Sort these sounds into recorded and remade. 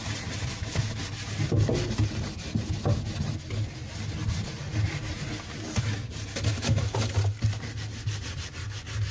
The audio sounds recorded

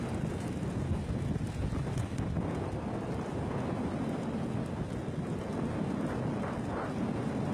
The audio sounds recorded